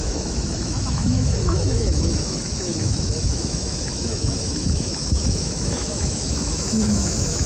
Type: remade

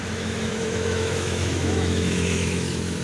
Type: remade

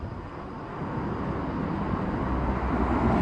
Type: recorded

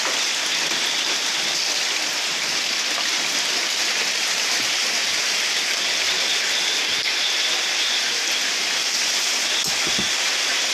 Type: recorded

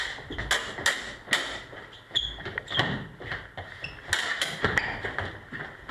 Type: recorded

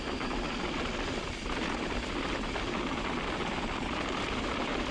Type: recorded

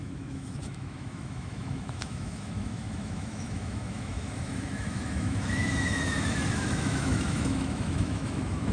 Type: remade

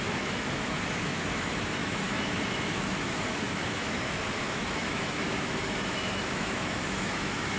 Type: remade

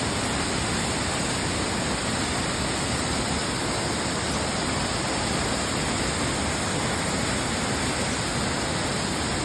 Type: recorded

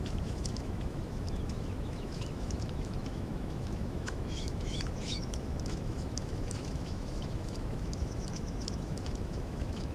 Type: remade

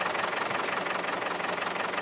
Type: recorded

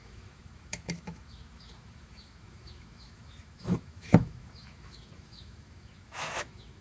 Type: remade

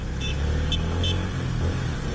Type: recorded